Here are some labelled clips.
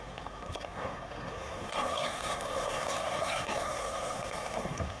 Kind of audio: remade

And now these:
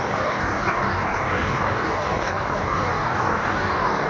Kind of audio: remade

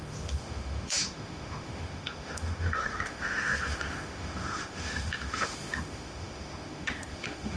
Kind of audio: remade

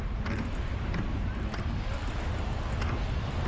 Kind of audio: remade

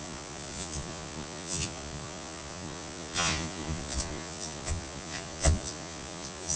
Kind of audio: remade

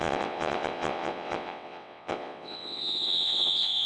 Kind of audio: remade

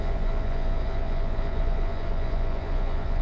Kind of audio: remade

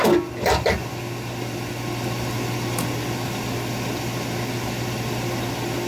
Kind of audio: recorded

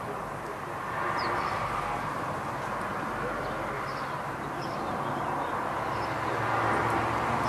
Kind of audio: recorded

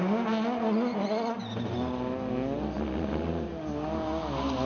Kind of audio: recorded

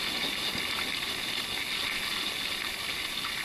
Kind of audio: recorded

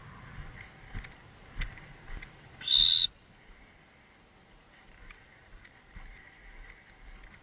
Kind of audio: recorded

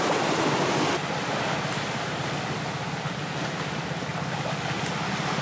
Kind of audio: recorded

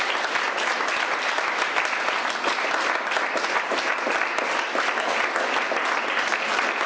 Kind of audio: recorded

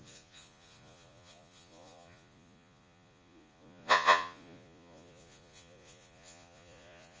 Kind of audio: remade